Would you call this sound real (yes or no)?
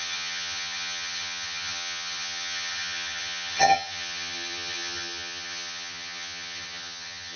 no